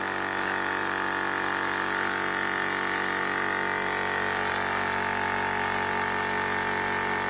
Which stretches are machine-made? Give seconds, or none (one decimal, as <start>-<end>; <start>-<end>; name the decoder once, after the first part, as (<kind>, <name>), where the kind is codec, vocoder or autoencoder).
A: none